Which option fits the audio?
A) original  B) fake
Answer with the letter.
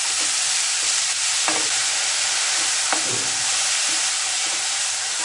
B